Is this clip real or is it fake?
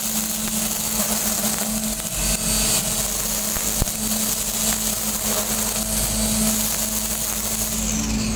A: real